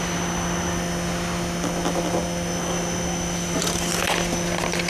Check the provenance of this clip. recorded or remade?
recorded